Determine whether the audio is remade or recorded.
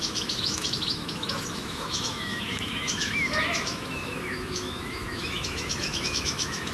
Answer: remade